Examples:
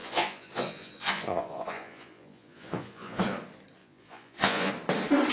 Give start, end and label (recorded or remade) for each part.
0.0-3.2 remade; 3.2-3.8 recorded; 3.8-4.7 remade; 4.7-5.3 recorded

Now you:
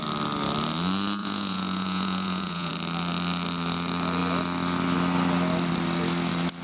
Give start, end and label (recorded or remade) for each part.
0.0-1.2 recorded; 1.2-2.7 remade; 2.7-6.6 recorded

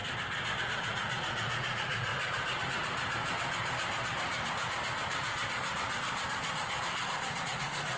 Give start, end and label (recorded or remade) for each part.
0.0-0.6 recorded; 0.6-2.1 remade; 2.1-2.6 recorded; 2.6-3.2 remade; 3.2-7.4 recorded; 7.4-8.0 remade

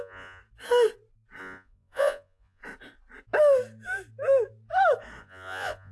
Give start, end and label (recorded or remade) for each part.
0.0-0.4 remade; 0.4-1.4 recorded; 1.4-2.6 remade; 2.6-5.2 recorded; 5.2-5.9 remade

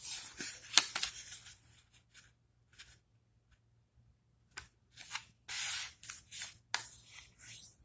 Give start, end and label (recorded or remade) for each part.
0.0-7.8 recorded

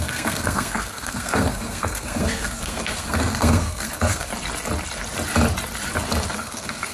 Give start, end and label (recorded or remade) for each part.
0.0-4.3 remade; 4.3-6.3 recorded; 6.3-6.9 remade

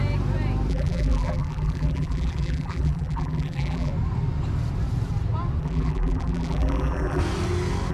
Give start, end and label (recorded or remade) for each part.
0.0-0.7 recorded; 0.7-3.9 remade; 3.9-5.6 recorded; 5.6-7.2 remade; 7.2-7.9 recorded

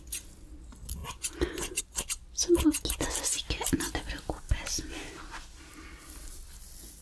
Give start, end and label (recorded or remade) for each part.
0.0-1.0 recorded; 1.0-1.8 remade; 1.8-7.0 recorded